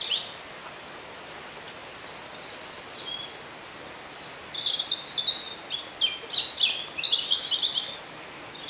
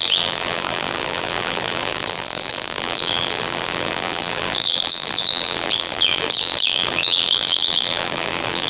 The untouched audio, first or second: first